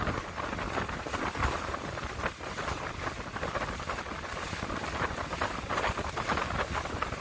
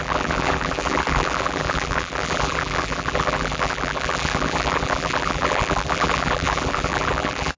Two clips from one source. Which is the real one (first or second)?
first